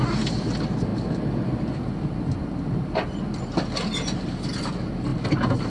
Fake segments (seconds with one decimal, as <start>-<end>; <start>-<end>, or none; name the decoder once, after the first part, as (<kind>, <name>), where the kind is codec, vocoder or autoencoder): none